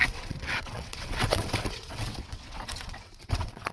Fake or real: fake